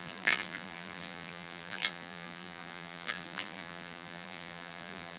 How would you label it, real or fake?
fake